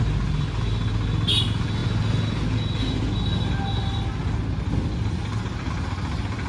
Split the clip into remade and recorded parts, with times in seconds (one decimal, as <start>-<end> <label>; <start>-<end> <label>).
0.0-6.5 recorded